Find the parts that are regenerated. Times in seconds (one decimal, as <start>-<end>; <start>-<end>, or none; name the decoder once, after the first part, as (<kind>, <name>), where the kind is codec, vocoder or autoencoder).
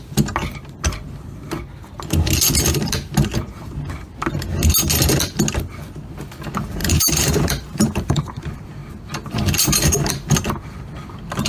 6.8-8.4 (vocoder, BigVGAN v2)